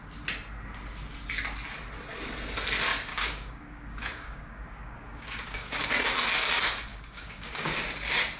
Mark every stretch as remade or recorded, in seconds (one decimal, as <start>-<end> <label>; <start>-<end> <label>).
0.0-3.1 recorded; 3.1-5.9 remade; 5.9-6.9 recorded; 6.9-7.7 remade; 7.7-8.4 recorded